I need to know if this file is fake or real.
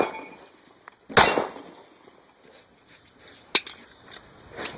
real